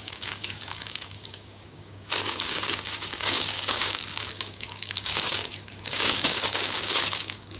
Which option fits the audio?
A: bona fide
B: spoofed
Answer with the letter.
B